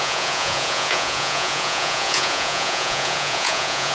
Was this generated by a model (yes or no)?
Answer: yes